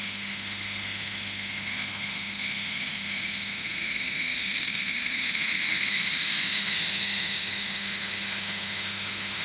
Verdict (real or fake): fake